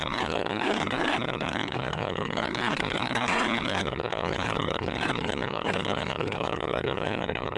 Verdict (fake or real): fake